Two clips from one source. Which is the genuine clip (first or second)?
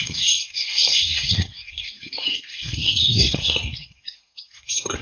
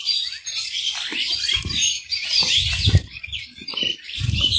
second